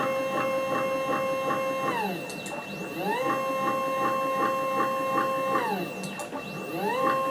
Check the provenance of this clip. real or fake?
real